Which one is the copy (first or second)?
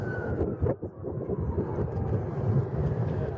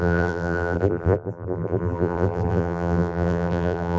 second